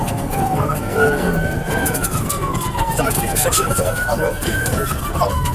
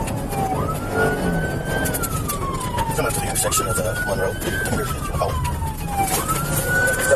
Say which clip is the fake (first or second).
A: first